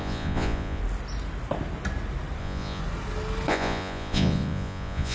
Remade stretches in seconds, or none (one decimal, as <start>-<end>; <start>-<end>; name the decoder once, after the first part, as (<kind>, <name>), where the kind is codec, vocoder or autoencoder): 0.0-0.8 (vocoder, Vocos); 2.4-2.8; 3.5-5.1

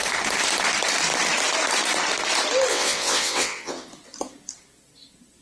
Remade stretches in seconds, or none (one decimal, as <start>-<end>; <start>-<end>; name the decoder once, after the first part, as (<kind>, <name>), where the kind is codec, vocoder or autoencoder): 2.7-3.9 (vocoder, WaveNeXt)

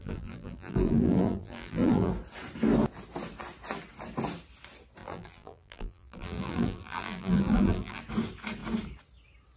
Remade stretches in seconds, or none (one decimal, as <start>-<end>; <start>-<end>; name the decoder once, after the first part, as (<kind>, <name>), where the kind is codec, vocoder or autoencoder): 0.0-2.1 (vocoder, BigVGAN v2); 5.0-8.0